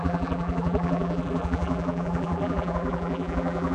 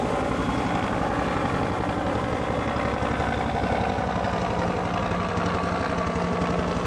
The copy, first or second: first